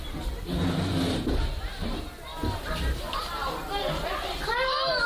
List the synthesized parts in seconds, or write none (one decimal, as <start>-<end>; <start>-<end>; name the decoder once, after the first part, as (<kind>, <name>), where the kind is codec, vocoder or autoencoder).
none